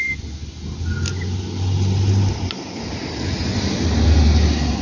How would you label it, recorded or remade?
recorded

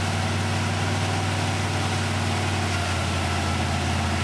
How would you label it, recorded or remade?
recorded